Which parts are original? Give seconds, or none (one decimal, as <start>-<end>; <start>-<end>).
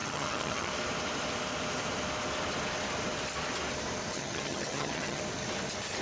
0.7-4.1; 5.2-6.0